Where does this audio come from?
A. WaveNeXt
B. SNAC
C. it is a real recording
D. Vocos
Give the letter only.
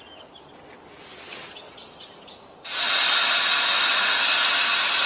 C